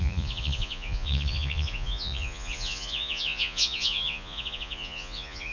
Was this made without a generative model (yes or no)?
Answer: no